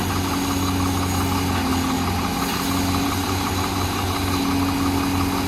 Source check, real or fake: real